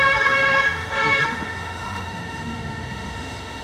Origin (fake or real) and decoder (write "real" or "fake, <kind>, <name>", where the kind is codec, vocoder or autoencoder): fake, autoencoder, DAC-VAE